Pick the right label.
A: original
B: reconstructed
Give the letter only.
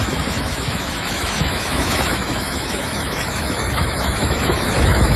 B